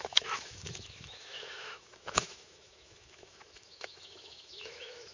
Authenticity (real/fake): fake